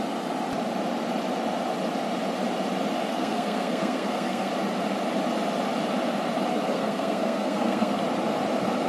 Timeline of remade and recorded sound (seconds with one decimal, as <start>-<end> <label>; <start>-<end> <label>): 0.0-3.1 recorded; 3.1-4.5 remade; 4.5-6.5 recorded; 6.5-8.0 remade; 8.0-8.9 recorded